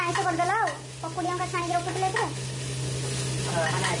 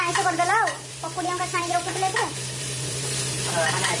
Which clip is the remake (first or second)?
second